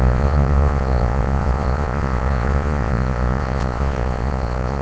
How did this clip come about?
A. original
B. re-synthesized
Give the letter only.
B